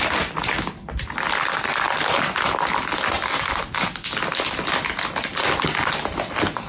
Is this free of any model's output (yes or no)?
yes